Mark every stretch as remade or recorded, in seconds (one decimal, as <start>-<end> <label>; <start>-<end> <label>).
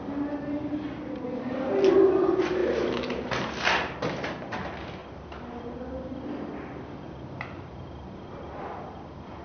0.0-9.4 recorded